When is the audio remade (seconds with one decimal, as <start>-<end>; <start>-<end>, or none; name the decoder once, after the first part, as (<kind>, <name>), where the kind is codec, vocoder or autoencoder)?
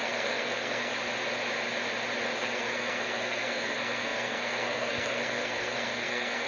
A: 0.0-0.9 (codec, SNAC); 2.4-6.5